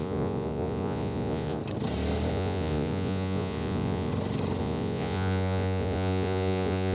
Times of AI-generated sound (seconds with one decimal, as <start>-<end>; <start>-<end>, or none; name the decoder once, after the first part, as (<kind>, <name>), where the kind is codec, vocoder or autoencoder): 0.0-1.6 (vocoder, Vocos); 2.3-4.1; 4.6-6.9

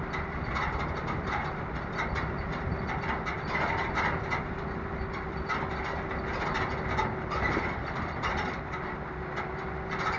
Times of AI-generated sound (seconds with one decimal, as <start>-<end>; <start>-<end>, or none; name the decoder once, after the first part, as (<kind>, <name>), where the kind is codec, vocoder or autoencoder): none

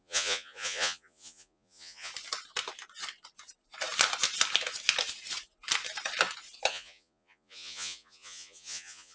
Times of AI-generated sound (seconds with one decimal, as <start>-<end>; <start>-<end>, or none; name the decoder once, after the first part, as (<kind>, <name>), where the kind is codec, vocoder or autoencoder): 0.0-2.1 (vocoder, Vocos); 6.7-9.1

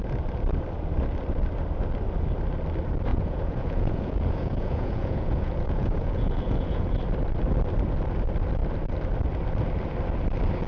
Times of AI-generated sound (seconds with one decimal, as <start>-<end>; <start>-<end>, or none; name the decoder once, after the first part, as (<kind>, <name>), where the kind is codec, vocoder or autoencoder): 3.1-7.0 (vocoder, Vocos)

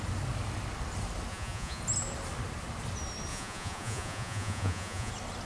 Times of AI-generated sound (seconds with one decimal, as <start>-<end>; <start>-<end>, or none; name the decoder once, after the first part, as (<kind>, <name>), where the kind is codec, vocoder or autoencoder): 1.3-1.8 (vocoder, Vocos); 3.3-5.1

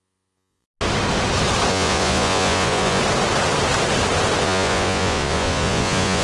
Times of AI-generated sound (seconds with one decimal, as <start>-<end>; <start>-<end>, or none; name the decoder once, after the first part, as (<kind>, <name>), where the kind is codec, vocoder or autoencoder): 0.0-0.6 (vocoder, Vocos); 1.7-3.0; 4.4-6.2

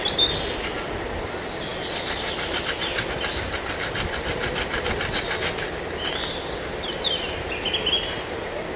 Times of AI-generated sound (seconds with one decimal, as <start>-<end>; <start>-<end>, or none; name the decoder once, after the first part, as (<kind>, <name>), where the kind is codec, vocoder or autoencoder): none

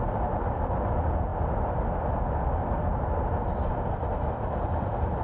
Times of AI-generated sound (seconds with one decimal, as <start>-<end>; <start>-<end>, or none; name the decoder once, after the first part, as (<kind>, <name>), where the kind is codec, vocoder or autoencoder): none